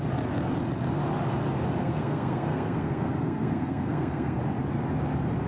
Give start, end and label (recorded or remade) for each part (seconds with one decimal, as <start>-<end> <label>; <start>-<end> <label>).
0.0-1.8 recorded; 1.8-4.4 remade; 4.4-5.5 recorded